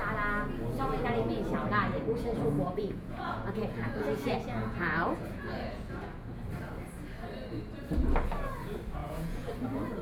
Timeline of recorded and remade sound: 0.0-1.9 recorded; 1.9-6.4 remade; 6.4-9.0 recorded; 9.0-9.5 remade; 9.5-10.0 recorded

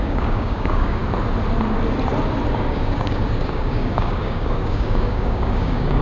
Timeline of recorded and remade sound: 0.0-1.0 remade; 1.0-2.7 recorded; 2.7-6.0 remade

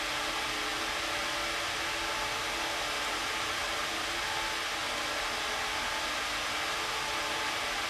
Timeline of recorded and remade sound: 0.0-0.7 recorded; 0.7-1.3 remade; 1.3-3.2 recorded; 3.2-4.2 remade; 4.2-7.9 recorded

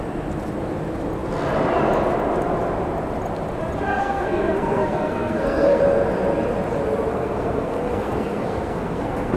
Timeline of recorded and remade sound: 0.0-3.9 recorded; 3.9-5.8 remade; 5.8-7.1 recorded; 7.1-9.4 remade

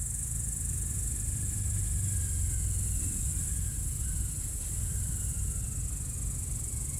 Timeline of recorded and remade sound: 0.0-7.0 recorded

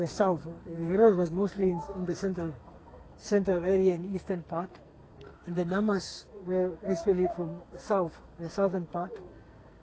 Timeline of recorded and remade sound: 0.0-9.8 remade

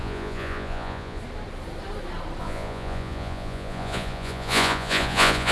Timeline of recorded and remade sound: 0.0-1.2 remade; 1.2-2.4 recorded; 2.4-5.5 remade